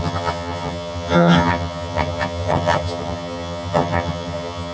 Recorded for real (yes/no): no